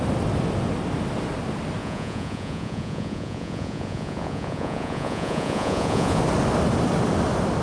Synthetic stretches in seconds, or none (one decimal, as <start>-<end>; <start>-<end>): 1.8-6.2